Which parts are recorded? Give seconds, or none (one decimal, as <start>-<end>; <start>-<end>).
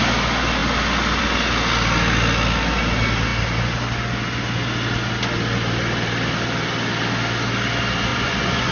0.0-8.1